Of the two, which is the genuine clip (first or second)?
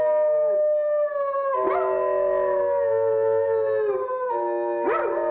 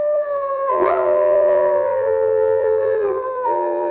first